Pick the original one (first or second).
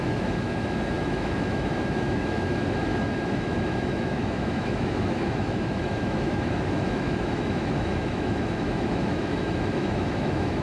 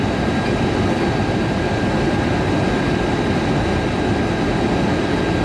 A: second